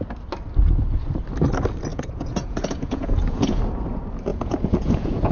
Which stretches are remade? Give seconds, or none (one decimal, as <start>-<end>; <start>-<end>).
1.9-3.6; 4.3-5.3